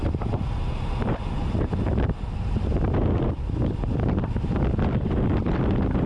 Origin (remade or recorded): recorded